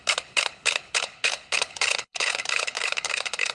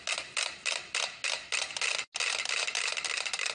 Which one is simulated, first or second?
first